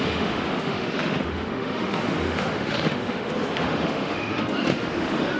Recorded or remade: remade